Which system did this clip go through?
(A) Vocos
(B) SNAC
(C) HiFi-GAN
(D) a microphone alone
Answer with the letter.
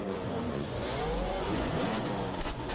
A